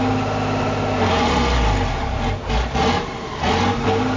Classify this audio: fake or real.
real